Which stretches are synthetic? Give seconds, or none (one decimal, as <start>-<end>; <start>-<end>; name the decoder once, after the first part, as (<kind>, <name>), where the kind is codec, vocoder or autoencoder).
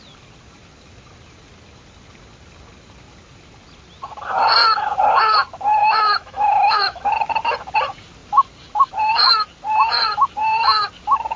5.8-7.0 (autoencoder, DAC-VAE)